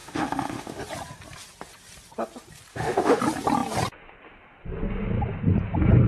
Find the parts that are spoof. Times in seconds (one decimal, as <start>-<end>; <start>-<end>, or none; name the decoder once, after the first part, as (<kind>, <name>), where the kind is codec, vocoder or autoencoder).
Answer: 0.0-0.8 (autoencoder, DAC-VAE); 2.7-3.2